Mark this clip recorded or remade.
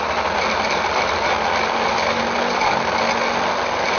recorded